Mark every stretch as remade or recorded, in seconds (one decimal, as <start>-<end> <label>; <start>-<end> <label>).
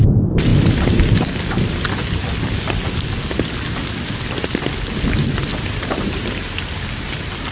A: 0.0-5.5 recorded; 5.5-7.5 remade